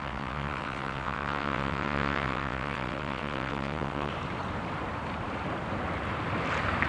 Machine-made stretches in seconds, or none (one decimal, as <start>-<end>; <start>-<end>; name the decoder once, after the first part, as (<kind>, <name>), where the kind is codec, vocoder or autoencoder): 0.0-4.1 (vocoder, WaveNeXt)

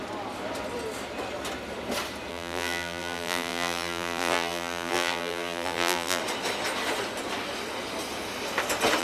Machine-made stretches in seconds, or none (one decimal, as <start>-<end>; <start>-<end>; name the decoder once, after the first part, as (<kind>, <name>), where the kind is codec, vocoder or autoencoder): 2.3-6.2 (vocoder, BigVGAN v2)

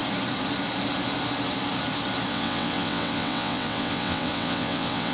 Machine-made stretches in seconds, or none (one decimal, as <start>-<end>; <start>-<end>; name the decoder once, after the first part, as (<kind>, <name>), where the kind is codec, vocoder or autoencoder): 2.3-5.1 (vocoder, WaveNeXt)

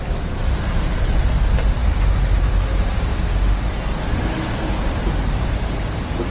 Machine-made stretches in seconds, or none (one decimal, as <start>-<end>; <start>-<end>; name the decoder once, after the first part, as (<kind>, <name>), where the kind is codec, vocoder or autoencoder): 0.0-3.1 (vocoder, BigVGAN v2); 4.5-6.3

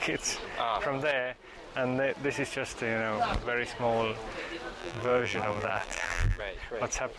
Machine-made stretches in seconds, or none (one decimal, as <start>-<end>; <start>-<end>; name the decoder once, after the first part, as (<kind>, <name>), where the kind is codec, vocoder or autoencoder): 4.8-6.4 (vocoder, BigVGAN v2)

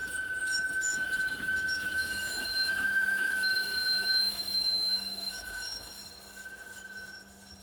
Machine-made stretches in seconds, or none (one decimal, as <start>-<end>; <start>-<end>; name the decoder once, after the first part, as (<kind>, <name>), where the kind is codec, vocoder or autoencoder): 0.0-6.0 (autoencoder, DAC-VAE)

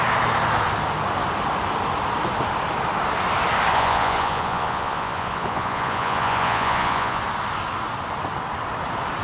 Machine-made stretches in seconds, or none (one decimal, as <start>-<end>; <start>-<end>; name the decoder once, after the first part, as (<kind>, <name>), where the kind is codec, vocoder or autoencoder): 3.7-7.2 (vocoder, Vocos)